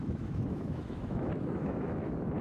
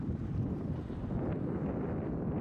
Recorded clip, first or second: second